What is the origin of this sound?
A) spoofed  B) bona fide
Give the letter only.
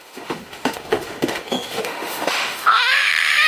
A